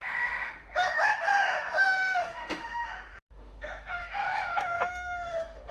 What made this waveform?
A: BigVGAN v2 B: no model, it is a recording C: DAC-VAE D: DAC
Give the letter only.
C